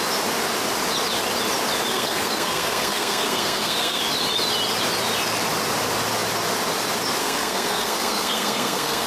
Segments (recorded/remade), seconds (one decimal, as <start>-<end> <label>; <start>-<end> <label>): 0.0-1.9 recorded; 1.9-4.0 remade; 4.0-7.2 recorded; 7.2-9.1 remade